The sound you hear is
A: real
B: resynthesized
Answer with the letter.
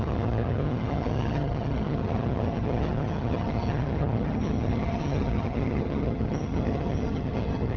B